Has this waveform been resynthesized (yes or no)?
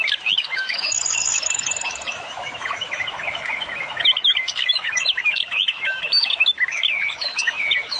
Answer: yes